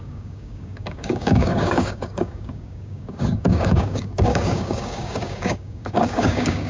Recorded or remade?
remade